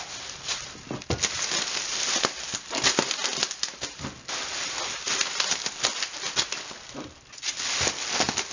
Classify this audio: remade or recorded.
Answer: recorded